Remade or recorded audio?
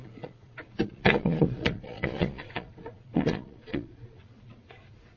remade